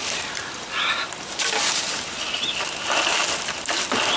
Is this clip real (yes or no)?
yes